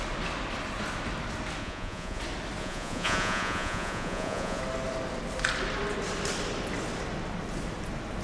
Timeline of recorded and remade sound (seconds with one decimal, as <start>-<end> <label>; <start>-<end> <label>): 0.0-1.6 recorded; 1.6-2.2 remade; 2.2-2.6 recorded; 2.6-4.6 remade; 4.6-8.2 recorded

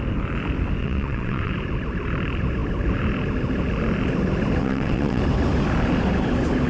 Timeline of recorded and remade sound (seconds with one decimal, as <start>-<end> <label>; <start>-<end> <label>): 0.0-0.8 recorded; 0.8-1.5 remade; 1.5-4.6 recorded; 4.6-5.2 remade; 5.2-6.7 recorded

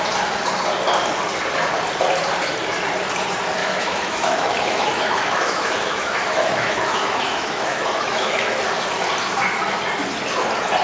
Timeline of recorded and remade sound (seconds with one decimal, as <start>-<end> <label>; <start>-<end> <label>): 0.0-3.6 recorded; 3.6-8.6 remade; 8.6-10.8 recorded

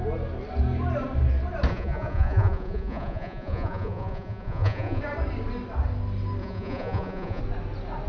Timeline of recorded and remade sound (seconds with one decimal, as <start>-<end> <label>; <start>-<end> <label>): 0.0-1.7 recorded; 1.7-5.0 remade; 5.0-6.4 recorded; 6.4-7.4 remade; 7.4-8.1 recorded

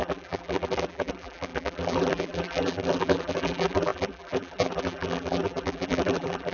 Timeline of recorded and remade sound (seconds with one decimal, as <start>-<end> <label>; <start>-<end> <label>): 0.0-6.5 remade

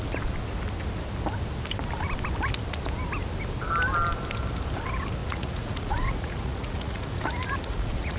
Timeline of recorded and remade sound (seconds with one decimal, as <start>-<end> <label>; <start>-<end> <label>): 0.0-5.2 recorded; 5.2-8.2 remade

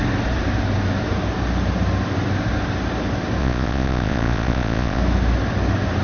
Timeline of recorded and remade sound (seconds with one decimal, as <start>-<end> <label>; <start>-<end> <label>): 0.0-3.4 recorded; 3.4-5.0 remade; 5.0-6.0 recorded